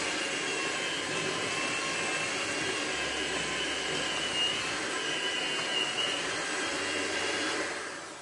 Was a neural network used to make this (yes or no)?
no